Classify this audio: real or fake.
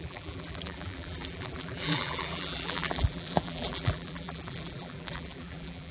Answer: fake